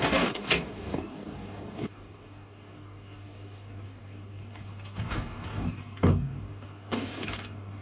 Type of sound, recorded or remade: remade